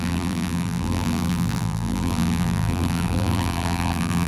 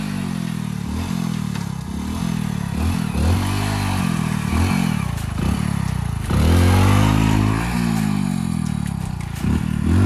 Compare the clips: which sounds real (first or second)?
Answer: second